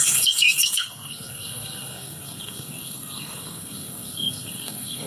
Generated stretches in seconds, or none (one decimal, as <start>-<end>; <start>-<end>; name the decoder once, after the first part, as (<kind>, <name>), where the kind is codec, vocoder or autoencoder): 0.0-5.1 (codec, SNAC)